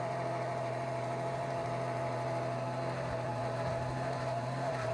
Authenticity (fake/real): fake